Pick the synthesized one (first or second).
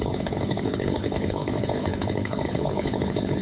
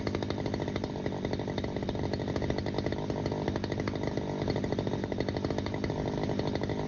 first